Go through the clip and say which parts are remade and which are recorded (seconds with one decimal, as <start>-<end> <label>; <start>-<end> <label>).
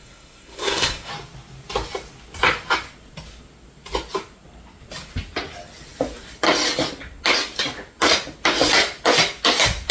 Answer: 0.0-1.1 remade; 1.1-9.9 recorded